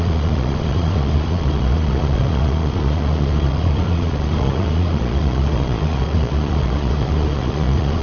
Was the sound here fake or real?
fake